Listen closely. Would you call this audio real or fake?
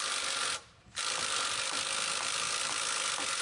real